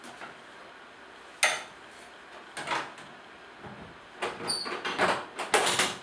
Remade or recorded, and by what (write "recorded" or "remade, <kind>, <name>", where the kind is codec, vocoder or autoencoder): recorded